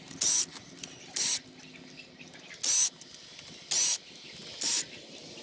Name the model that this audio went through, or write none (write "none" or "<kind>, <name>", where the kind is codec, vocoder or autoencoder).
none